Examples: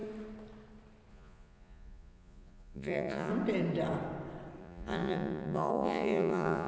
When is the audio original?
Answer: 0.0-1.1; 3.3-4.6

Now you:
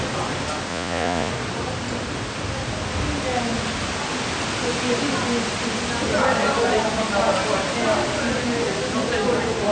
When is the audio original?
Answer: 0.0-0.7; 1.3-9.7

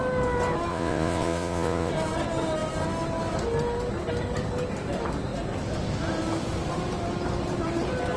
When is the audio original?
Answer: 0.0-0.7; 1.9-8.2

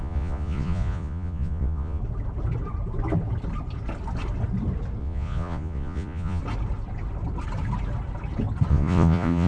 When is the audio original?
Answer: 2.0-5.0; 6.4-8.7